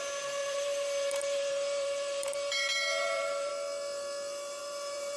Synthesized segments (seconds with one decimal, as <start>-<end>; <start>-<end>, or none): 0.4-3.5; 4.6-5.2